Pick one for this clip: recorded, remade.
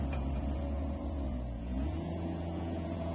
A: remade